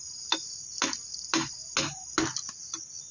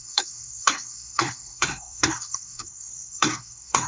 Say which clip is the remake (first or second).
second